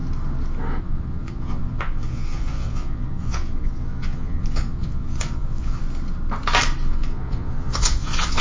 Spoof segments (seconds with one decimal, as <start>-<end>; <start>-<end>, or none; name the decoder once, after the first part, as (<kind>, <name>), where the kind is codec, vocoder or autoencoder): 0.8-5.8 (vocoder, Vocos); 6.9-8.4